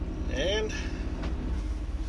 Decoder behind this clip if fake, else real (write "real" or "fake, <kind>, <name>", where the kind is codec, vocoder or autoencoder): real